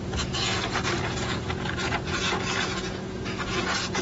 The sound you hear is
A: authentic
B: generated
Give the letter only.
B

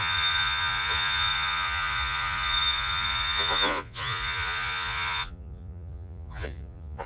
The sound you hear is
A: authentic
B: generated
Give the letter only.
B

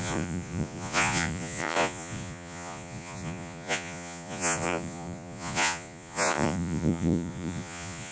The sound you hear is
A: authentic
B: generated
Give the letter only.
B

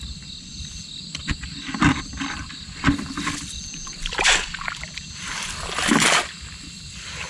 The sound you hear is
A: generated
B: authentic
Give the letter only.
B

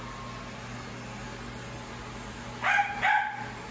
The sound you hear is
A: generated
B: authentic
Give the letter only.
B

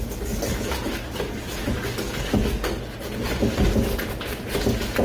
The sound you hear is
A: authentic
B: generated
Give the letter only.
A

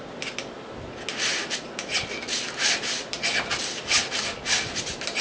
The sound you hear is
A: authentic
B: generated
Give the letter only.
A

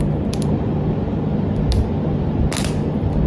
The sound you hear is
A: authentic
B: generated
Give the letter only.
A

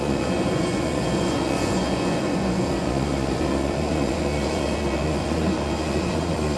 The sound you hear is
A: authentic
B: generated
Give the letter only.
B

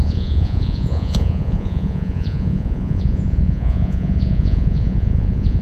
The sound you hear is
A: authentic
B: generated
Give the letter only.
B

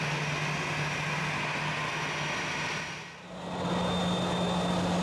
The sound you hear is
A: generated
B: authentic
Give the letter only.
B